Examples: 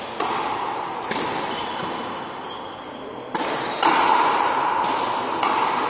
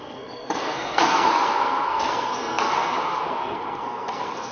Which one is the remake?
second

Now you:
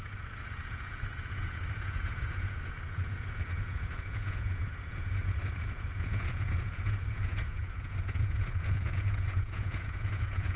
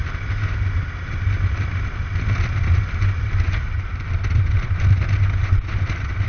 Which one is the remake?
first